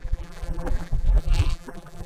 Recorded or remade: remade